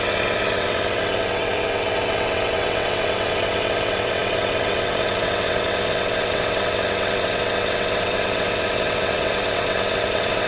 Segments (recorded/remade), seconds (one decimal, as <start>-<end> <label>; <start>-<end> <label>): 0.0-10.5 remade